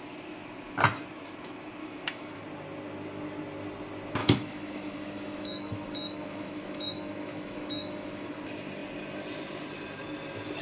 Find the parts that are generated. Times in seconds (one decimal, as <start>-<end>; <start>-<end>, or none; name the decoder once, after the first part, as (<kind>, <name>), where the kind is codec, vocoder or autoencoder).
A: 1.8-2.4 (autoencoder, DAC-VAE); 4.2-8.3